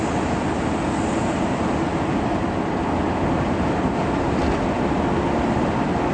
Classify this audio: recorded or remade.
recorded